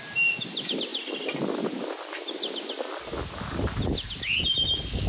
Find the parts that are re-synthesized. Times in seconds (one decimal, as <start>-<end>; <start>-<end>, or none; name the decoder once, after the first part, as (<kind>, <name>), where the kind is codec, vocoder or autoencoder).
none